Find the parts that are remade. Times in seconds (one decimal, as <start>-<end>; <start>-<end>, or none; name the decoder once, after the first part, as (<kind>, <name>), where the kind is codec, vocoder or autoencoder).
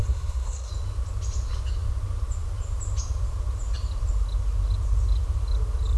0.0-0.7 (codec, SNAC)